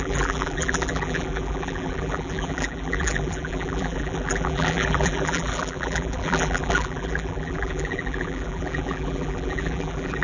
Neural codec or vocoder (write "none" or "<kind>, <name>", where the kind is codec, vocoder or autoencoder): vocoder, BigVGAN v2